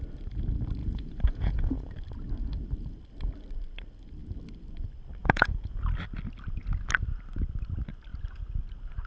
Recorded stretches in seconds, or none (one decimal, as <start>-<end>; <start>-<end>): 0.0-0.8; 1.9-5.2; 5.8-9.1